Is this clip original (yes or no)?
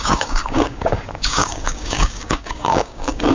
no